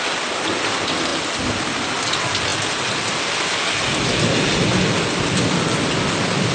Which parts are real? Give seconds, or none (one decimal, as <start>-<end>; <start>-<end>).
0.0-6.5